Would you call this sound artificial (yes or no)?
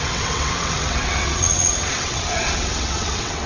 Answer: yes